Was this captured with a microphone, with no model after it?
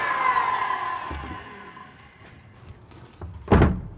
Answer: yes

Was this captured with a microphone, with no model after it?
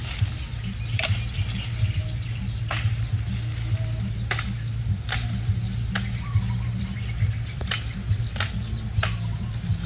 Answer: yes